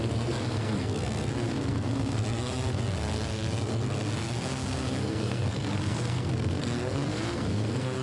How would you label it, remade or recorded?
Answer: remade